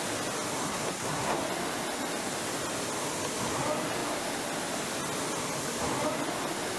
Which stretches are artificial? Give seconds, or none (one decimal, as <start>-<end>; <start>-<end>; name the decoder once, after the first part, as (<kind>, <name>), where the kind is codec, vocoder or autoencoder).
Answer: 0.6-1.4 (codec, SNAC)